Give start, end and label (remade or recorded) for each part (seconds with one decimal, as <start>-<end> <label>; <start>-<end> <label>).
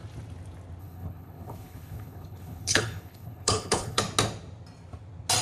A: 0.0-0.8 recorded; 0.8-4.0 remade; 4.0-5.4 recorded